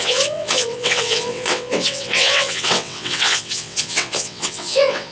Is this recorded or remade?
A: remade